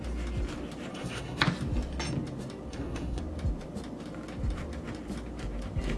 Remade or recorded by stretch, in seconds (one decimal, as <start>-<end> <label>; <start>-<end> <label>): 0.0-0.9 recorded; 0.9-1.4 remade; 1.4-2.7 recorded; 2.7-3.2 remade; 3.2-6.0 recorded